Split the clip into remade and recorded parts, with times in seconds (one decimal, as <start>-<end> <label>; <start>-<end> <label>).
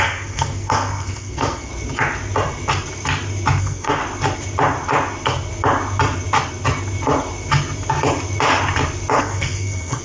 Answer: 0.0-1.7 remade; 1.7-3.6 recorded; 3.6-4.0 remade; 4.0-9.2 recorded; 9.2-10.0 remade